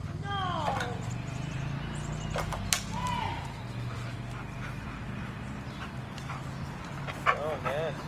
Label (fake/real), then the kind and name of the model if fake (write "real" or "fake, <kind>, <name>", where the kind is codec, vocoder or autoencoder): real